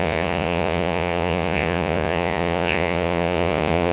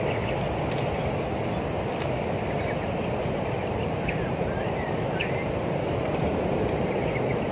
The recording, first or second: second